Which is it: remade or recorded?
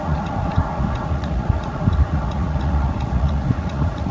remade